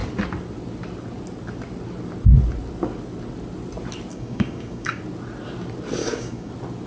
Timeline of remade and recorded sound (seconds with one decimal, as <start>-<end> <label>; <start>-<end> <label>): 0.0-4.1 recorded; 4.1-5.0 remade; 5.0-6.0 recorded; 6.0-6.5 remade; 6.5-6.9 recorded